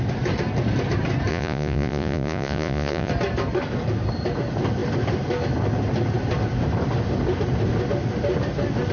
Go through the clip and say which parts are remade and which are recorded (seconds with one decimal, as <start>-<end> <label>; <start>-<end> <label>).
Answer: 0.0-1.3 recorded; 1.3-3.1 remade; 3.1-8.9 recorded